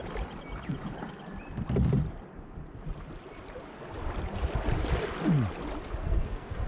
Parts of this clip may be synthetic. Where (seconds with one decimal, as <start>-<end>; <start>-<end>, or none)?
6.0-6.7